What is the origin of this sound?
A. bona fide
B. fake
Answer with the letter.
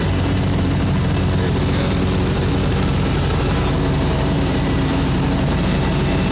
B